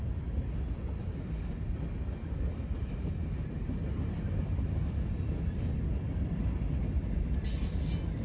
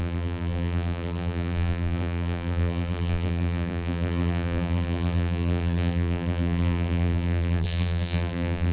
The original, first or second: first